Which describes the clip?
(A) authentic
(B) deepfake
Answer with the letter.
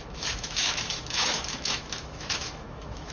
B